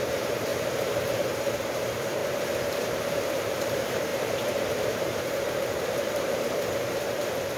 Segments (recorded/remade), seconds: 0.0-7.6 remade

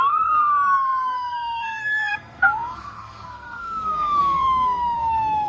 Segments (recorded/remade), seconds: 0.0-5.5 remade